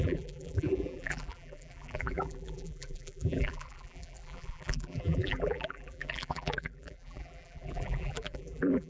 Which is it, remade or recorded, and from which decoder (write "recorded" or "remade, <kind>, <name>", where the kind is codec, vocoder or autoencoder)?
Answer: remade, vocoder, BigVGAN v2